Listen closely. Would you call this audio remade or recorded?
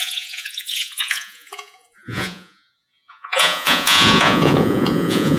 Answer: remade